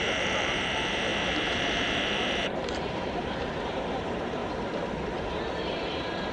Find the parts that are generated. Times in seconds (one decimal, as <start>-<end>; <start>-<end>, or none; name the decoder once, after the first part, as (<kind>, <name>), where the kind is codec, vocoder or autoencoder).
0.0-4.4 (vocoder, BigVGAN v2); 5.2-6.3